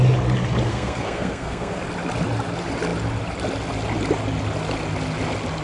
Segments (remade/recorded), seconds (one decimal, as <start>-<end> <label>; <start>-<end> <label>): 0.0-0.7 recorded; 0.7-1.8 remade; 1.8-5.6 recorded